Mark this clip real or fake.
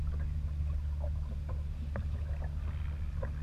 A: real